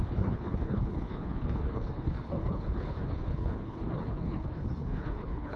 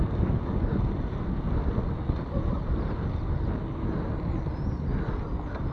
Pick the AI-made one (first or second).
first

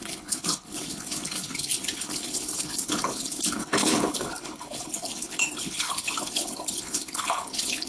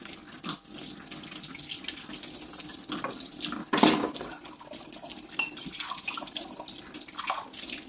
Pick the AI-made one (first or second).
first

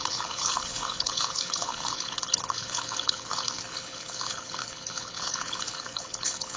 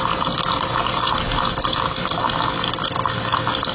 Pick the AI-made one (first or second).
first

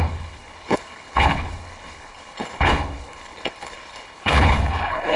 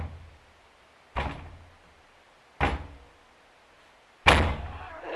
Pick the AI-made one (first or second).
first